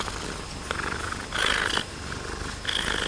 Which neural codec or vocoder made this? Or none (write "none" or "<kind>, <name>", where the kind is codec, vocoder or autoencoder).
none